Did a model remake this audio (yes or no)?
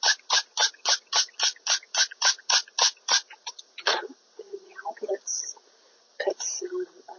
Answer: yes